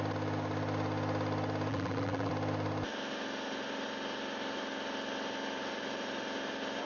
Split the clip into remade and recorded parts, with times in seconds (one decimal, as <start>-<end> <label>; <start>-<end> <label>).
0.0-1.7 recorded; 1.7-2.3 remade; 2.3-6.8 recorded